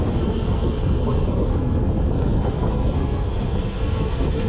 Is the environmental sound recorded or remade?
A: remade